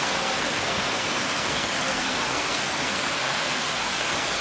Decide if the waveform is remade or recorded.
remade